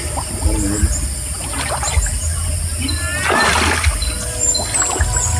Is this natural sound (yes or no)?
yes